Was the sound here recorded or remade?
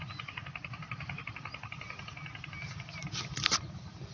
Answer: recorded